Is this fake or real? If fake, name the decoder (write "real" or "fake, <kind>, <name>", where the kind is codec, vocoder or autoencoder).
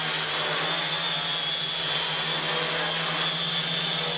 real